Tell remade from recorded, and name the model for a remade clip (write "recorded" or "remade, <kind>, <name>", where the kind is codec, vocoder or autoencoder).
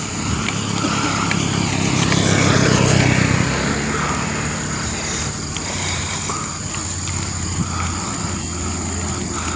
recorded